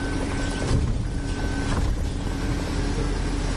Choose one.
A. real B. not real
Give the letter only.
A